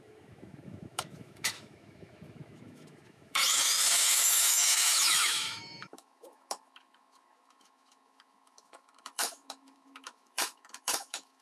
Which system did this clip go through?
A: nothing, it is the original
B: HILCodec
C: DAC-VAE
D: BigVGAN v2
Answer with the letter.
C